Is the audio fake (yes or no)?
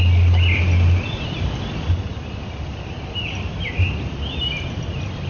no